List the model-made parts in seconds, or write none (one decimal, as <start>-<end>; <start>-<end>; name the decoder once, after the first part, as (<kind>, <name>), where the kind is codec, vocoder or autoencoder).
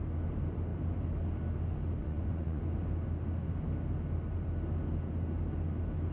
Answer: 2.0-2.6 (vocoder, Vocos)